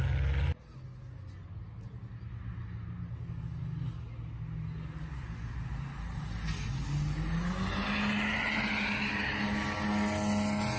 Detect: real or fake real